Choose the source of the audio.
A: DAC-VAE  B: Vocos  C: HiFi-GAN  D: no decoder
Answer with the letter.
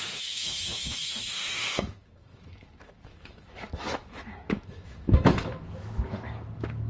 A